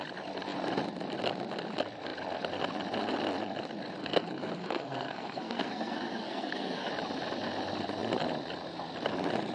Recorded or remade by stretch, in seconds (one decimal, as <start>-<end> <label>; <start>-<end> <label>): 0.0-4.0 recorded; 4.0-6.9 remade; 6.9-9.5 recorded